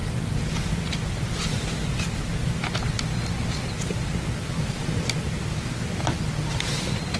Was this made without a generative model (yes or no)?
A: yes